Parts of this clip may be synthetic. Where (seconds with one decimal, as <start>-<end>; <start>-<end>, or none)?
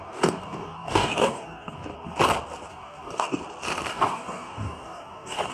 0.0-1.9; 2.7-3.4; 3.9-5.5